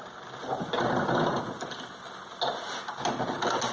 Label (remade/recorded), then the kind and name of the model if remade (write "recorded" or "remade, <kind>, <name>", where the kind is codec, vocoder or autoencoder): recorded